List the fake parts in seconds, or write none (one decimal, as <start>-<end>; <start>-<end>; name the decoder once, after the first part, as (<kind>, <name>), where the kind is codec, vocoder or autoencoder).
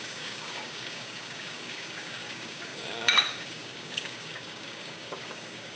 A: 0.0-5.8 (codec, DAC)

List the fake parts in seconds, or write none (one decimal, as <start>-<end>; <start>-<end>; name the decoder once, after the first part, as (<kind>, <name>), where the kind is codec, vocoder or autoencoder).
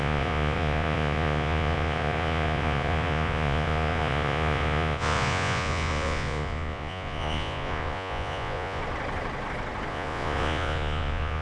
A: 0.0-8.8 (vocoder, Vocos); 9.9-11.4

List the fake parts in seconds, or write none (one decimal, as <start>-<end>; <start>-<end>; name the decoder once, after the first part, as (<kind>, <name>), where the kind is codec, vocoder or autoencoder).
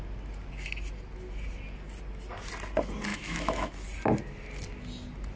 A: 3.1-3.7 (autoencoder, DAC-VAE)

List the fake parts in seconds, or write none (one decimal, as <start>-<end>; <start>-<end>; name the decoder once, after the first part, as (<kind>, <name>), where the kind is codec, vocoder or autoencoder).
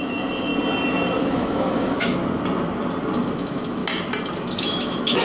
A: 0.0-0.5 (autoencoder, DAC-VAE); 1.2-2.2; 3.3-3.8; 4.6-5.2